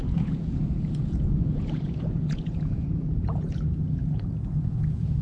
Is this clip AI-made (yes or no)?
yes